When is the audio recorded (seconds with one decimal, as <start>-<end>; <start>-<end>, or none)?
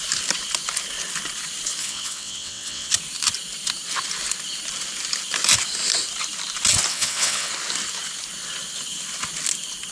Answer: 0.0-1.8; 2.9-6.9; 7.5-9.9